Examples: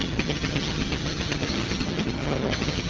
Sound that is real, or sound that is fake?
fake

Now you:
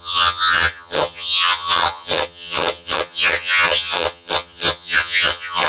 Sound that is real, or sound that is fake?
fake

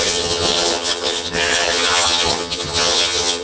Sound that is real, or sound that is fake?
fake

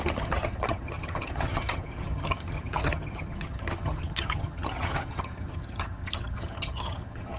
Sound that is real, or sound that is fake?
fake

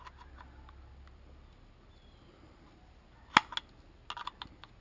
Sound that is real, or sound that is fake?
real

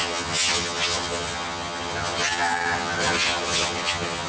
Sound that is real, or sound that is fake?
fake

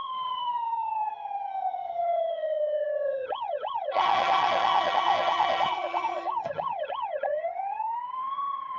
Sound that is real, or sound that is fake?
fake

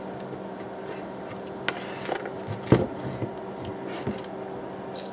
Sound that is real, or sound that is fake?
real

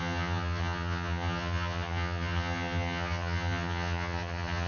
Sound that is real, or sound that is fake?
fake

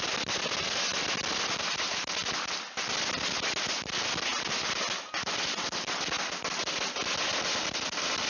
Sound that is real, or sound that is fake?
real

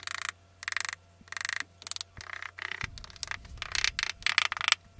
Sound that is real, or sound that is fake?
real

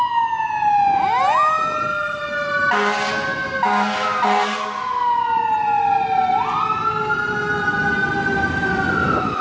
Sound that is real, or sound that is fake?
real